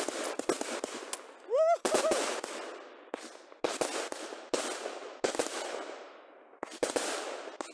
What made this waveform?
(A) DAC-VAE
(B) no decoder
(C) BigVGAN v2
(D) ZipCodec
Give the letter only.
B